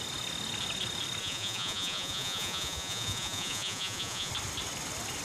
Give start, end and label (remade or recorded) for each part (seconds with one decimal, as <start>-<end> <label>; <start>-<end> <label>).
0.0-1.2 recorded; 1.2-4.3 remade; 4.3-5.2 recorded